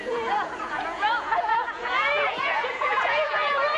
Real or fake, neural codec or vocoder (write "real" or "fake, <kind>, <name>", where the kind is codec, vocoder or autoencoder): fake, vocoder, Vocos